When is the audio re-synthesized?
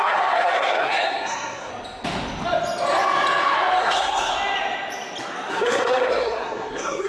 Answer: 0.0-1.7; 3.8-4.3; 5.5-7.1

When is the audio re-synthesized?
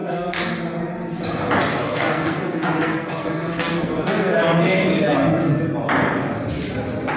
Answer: 0.0-0.5; 1.8-5.6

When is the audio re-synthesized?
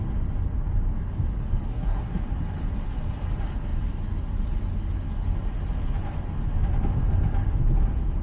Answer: 1.7-2.2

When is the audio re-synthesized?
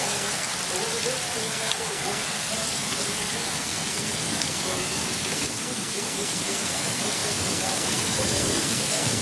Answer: 0.0-0.5; 1.4-9.2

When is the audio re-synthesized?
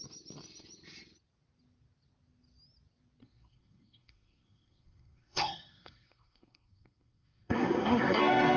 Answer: 3.2-8.2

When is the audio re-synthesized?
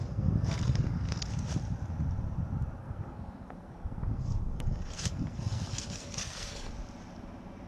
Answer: 0.0-1.3; 2.8-6.7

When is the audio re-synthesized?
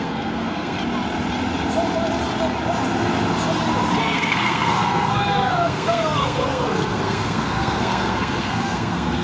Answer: 0.0-0.8; 4.0-9.2